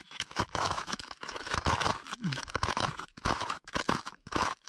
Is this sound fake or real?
fake